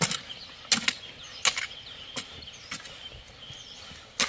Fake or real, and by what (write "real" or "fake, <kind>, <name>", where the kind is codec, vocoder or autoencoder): real